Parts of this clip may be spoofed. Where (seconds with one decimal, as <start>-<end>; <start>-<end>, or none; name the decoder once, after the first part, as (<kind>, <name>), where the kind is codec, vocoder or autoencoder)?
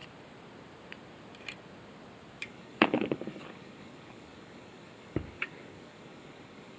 2.4-6.8 (codec, DAC)